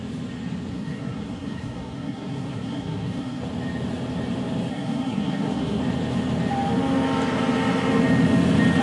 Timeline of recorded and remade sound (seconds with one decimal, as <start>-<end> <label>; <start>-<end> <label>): 0.0-0.7 recorded; 0.7-3.4 remade; 3.4-4.7 recorded; 4.7-5.8 remade; 5.8-8.8 recorded